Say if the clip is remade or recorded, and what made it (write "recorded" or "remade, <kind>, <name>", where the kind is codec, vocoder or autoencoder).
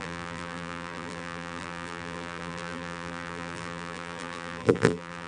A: remade, vocoder, BigVGAN v2